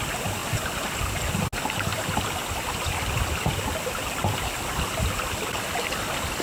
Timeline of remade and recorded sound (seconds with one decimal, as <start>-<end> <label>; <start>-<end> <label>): 0.0-1.9 recorded; 1.9-4.6 remade; 4.6-6.4 recorded